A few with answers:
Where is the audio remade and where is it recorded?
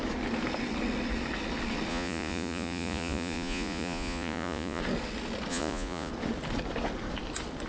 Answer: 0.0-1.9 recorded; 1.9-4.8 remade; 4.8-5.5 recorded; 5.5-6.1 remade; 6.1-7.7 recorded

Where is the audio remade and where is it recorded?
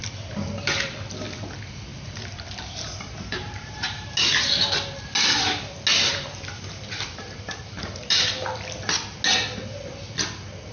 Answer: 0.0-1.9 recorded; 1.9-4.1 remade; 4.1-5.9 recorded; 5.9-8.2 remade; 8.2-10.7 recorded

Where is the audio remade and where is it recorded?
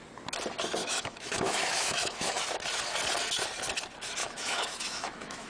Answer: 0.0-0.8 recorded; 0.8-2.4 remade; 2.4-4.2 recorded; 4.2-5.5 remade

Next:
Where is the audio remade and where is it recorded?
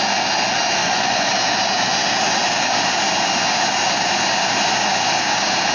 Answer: 0.0-0.8 recorded; 0.8-1.4 remade; 1.4-5.7 recorded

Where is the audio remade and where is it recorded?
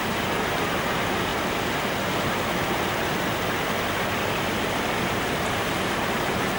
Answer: 0.0-1.3 remade; 1.3-5.0 recorded; 5.0-6.6 remade